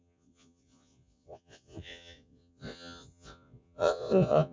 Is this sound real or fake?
fake